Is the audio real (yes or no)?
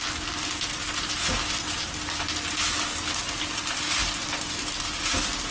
yes